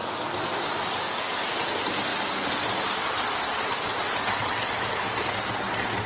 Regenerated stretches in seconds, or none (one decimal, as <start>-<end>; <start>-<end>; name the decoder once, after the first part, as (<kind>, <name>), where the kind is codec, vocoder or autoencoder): none